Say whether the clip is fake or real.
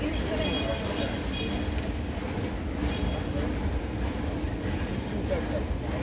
real